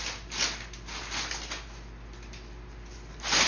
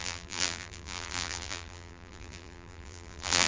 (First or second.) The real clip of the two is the first